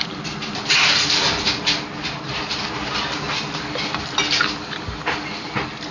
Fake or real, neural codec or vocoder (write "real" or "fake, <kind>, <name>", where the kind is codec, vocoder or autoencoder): real